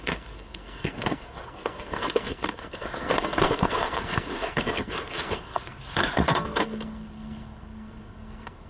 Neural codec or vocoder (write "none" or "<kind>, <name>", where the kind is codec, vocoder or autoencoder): codec, SNAC